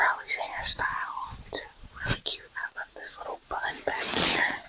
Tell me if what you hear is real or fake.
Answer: fake